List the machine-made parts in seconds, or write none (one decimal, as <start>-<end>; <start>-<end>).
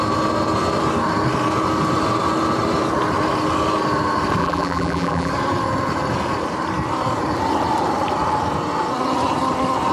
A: 4.4-5.3